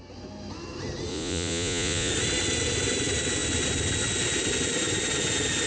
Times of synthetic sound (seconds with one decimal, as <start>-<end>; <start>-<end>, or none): 1.1-2.1